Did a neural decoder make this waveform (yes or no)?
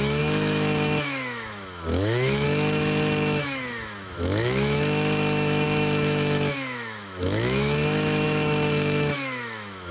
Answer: yes